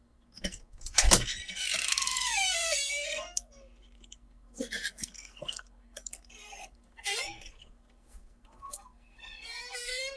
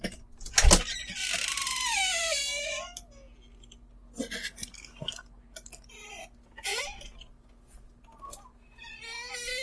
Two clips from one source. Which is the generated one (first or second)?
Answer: first